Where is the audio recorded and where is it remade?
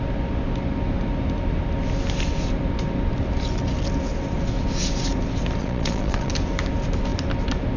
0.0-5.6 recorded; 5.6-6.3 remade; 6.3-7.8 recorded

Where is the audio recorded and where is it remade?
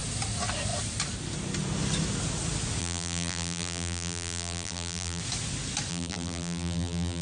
0.0-2.8 recorded; 2.8-5.2 remade; 5.2-5.9 recorded; 5.9-7.2 remade